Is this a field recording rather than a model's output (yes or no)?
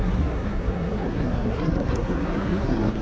no